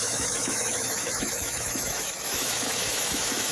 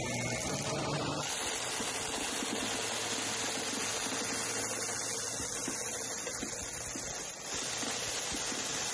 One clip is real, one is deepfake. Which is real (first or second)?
second